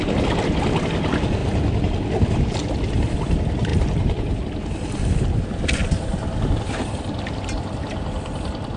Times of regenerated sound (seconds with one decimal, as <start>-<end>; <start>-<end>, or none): 3.7-4.4; 5.8-6.7